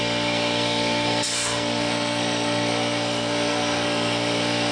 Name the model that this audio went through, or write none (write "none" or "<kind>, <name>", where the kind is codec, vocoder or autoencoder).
codec, SNAC